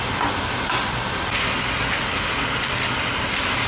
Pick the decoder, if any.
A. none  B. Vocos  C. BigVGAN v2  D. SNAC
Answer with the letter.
A